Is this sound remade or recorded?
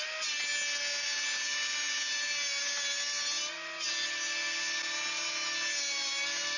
recorded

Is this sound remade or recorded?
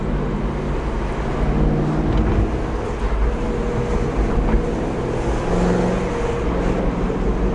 recorded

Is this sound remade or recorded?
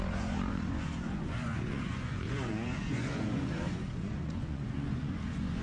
remade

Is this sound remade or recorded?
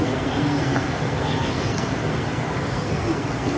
remade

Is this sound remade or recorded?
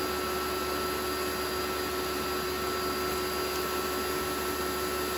recorded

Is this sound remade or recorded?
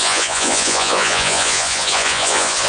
remade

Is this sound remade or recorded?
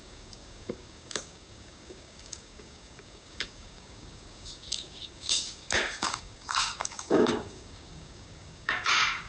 remade